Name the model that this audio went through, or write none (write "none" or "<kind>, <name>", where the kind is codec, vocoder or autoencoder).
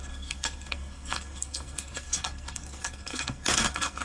codec, SNAC